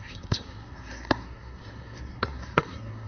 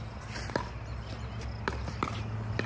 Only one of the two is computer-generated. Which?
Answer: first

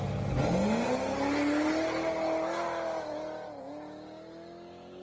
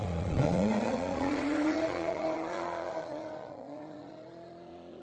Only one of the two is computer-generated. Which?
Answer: second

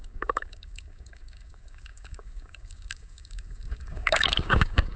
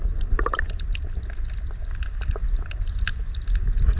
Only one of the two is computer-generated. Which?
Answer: first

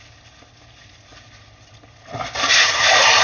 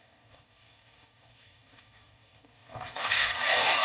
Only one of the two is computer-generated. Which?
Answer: second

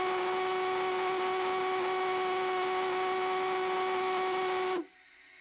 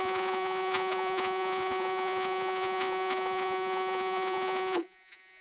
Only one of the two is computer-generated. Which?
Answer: second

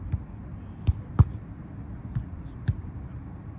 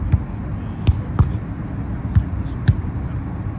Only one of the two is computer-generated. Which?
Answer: first